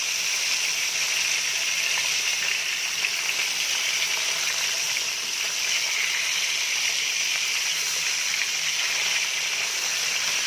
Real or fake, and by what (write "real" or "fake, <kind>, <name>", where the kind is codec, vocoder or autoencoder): fake, vocoder, BigVGAN v2